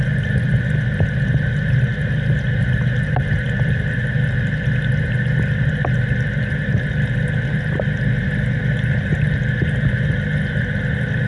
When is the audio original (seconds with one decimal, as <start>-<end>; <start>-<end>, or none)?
0.0-11.3